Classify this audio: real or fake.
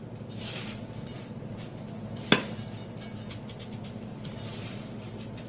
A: real